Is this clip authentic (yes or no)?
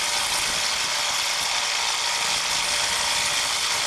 yes